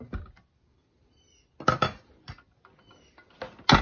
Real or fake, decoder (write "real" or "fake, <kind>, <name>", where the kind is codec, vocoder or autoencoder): real